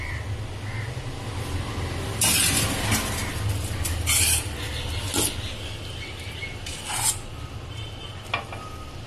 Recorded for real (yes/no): yes